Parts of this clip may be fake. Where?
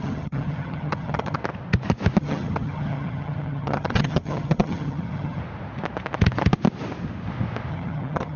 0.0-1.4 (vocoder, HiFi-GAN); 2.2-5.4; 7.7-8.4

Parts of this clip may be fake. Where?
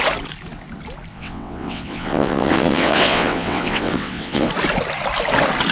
1.1-4.5 (vocoder, WaveNeXt)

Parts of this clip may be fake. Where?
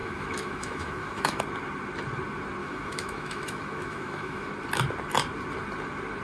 0.0-1.4 (autoencoder, DAC-VAE); 2.6-4.5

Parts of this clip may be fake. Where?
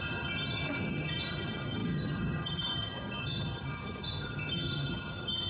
0.0-5.5 (vocoder, HiFi-GAN)